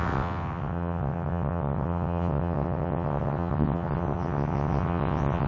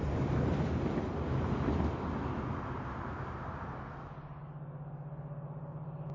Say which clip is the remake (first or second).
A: first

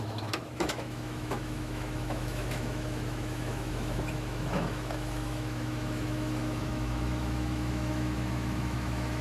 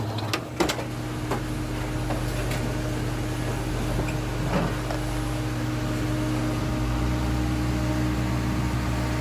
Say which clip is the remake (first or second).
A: first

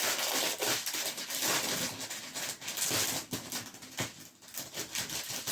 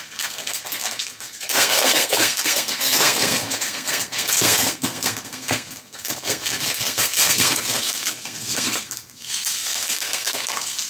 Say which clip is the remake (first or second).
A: second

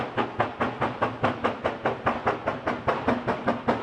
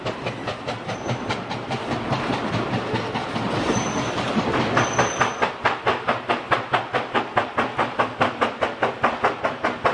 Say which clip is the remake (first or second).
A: second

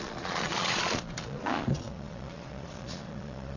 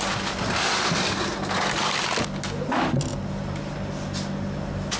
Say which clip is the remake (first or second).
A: first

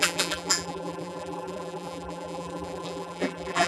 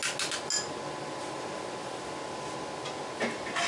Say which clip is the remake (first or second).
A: first